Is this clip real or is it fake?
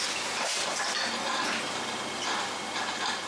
real